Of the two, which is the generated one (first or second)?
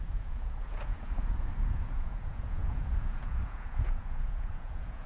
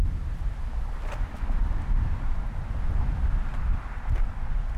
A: first